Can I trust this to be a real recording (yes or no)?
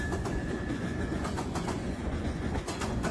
no